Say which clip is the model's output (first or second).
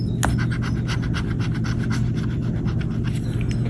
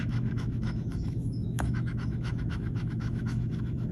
second